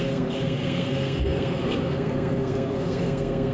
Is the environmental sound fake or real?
fake